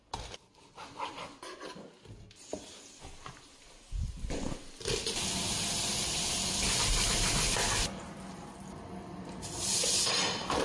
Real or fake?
real